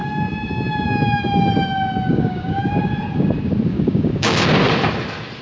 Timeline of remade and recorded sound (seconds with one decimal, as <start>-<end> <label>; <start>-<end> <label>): 0.0-2.9 remade; 2.9-3.7 recorded; 3.7-4.5 remade; 4.5-5.4 recorded